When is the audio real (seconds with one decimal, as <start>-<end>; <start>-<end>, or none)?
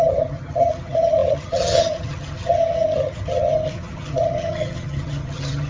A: none